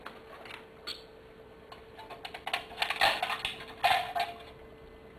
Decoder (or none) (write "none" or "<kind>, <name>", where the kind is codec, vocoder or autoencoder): none